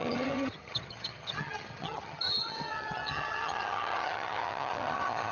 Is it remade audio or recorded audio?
remade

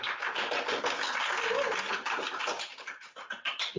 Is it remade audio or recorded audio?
recorded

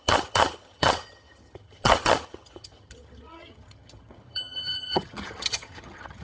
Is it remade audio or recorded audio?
remade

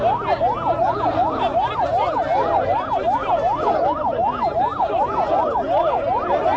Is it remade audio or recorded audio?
recorded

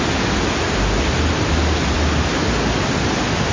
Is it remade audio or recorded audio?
recorded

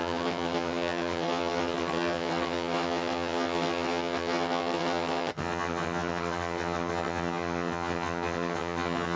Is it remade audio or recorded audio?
remade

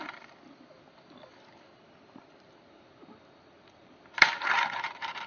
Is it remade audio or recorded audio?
recorded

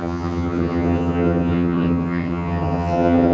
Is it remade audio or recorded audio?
remade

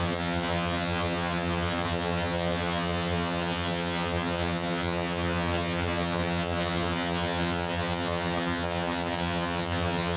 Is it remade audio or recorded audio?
remade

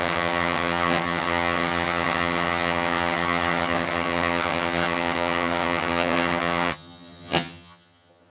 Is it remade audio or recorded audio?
remade